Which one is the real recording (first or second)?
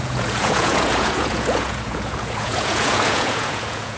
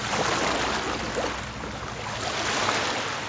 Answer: second